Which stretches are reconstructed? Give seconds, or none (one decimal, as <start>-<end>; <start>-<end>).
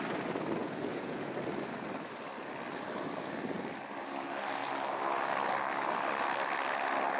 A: 0.6-1.3